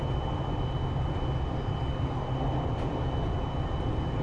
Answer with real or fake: real